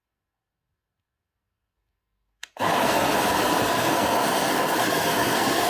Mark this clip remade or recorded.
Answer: remade